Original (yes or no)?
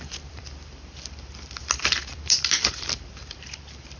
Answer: no